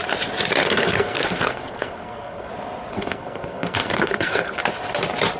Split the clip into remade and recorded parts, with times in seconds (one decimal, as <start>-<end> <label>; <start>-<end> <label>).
0.0-0.6 recorded; 0.6-2.5 remade; 2.5-2.9 recorded; 2.9-4.6 remade; 4.6-5.4 recorded